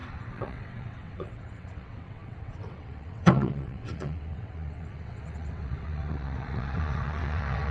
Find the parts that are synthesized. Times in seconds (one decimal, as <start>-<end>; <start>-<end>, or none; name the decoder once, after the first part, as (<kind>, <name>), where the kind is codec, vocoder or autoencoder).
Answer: 0.0-7.7 (vocoder, WaveNeXt)